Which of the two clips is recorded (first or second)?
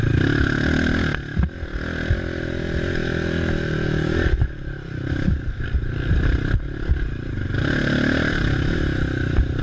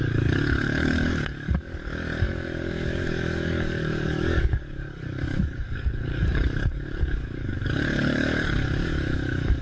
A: first